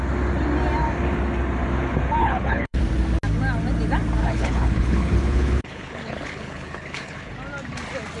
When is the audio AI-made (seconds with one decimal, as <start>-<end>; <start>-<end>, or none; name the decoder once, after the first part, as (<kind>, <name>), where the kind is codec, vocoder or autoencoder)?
2.2-2.8 (codec, HILCodec); 4.2-7.3